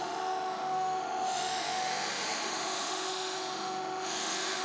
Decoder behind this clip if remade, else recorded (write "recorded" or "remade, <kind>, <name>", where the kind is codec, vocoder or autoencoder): remade, autoencoder, DAC-VAE